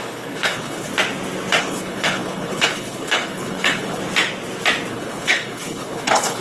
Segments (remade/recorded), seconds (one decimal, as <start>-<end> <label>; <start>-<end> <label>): 0.0-0.9 remade; 0.9-1.6 recorded; 1.6-4.0 remade; 4.0-4.9 recorded; 4.9-6.4 remade